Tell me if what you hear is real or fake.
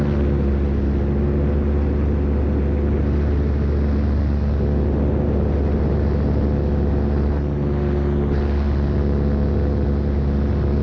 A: real